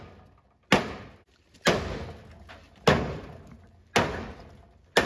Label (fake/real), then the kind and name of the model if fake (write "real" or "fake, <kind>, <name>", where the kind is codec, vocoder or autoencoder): real